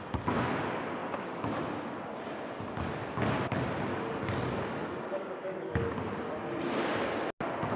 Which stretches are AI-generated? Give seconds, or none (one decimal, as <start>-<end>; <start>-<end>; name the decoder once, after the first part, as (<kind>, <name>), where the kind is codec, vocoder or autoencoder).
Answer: 1.0-1.6 (codec, DAC); 3.9-5.9